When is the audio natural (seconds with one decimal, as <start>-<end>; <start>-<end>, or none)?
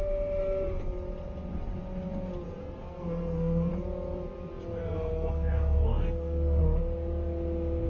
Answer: 0.0-2.6; 3.7-4.8; 6.6-7.9